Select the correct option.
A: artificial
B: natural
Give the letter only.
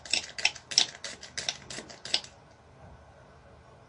B